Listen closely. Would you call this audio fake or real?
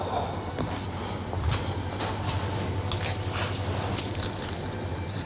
real